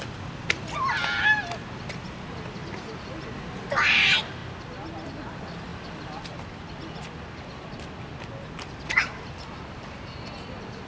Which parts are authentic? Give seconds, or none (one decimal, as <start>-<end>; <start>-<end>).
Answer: 0.0-5.7; 8.3-10.9